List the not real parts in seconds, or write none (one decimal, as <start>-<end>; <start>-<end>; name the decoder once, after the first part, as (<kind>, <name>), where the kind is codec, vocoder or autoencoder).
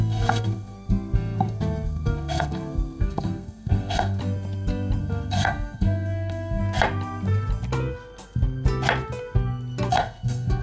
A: 0.0-4.2 (codec, SNAC); 5.0-6.6; 9.9-10.6